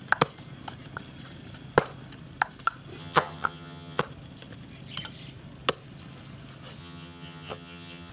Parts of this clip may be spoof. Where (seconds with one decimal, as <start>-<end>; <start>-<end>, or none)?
3.0-4.0; 6.8-8.1

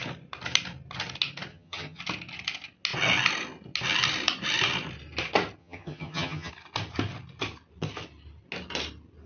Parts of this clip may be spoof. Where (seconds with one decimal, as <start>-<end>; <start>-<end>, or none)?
1.5-2.0; 5.6-6.5

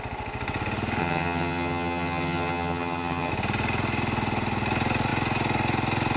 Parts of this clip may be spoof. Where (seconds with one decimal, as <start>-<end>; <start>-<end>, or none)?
1.0-3.3

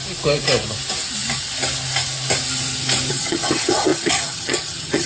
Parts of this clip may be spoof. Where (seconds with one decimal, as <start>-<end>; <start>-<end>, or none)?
3.1-5.1